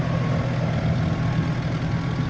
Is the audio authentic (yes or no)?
yes